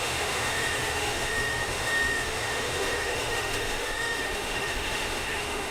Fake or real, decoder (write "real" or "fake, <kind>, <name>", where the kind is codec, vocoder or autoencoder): fake, autoencoder, DAC-VAE